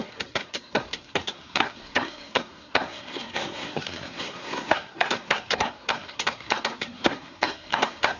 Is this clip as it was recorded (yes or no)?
no